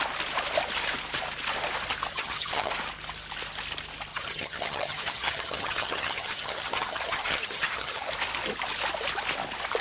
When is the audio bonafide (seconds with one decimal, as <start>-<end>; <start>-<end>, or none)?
0.0-2.1; 2.7-4.1; 8.1-9.8